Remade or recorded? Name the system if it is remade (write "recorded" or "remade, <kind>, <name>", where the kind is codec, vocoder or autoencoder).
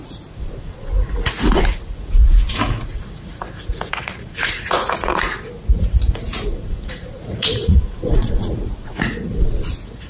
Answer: remade, vocoder, Vocos